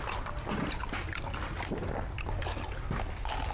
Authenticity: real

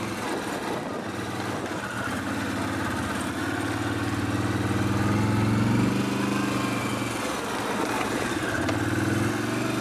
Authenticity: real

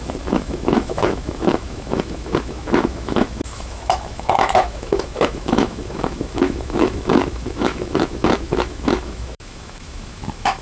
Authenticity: fake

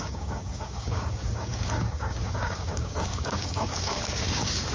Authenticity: fake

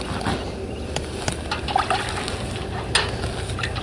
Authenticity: real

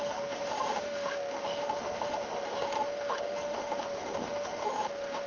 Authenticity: fake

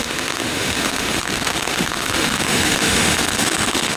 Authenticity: fake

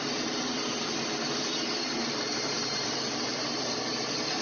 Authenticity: fake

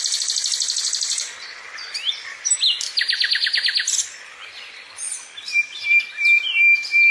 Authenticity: real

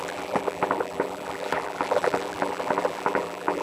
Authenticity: fake